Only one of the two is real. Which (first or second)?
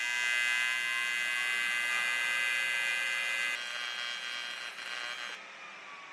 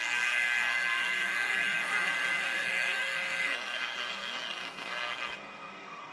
first